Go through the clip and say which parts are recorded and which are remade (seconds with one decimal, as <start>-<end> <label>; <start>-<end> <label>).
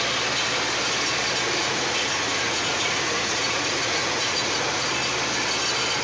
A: 0.0-1.6 recorded; 1.6-4.9 remade; 4.9-6.0 recorded